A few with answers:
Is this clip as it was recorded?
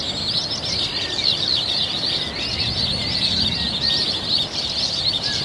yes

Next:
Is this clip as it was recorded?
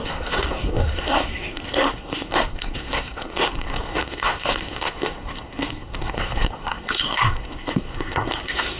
no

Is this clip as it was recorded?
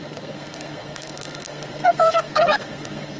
no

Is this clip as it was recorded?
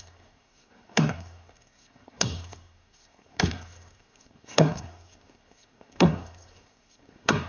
no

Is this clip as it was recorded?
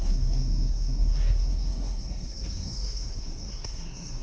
no